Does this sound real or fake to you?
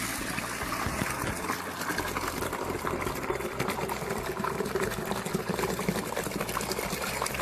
real